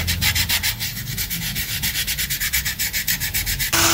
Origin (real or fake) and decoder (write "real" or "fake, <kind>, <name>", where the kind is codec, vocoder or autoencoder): real